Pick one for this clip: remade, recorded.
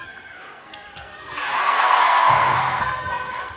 remade